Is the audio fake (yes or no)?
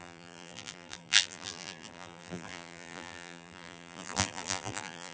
yes